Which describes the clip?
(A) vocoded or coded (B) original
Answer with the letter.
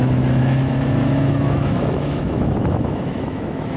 A